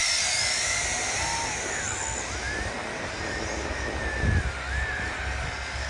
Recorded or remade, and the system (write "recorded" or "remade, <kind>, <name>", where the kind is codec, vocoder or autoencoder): recorded